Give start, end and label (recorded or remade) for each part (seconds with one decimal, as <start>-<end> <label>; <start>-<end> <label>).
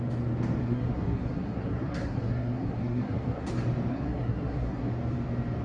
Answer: 0.0-0.6 recorded; 0.6-3.5 remade; 3.5-3.9 recorded; 3.9-4.9 remade; 4.9-5.6 recorded